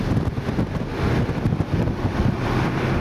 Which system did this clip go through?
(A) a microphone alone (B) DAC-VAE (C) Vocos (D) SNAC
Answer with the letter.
A